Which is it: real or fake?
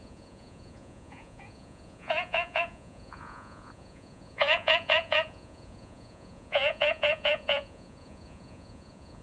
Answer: fake